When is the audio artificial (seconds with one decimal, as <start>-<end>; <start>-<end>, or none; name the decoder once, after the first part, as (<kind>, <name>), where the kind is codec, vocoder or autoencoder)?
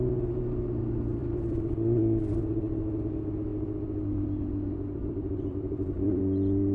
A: 1.2-1.7 (vocoder, BigVGAN v2); 5.0-6.2